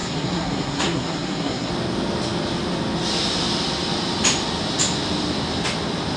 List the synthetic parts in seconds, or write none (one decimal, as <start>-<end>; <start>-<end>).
0.0-1.7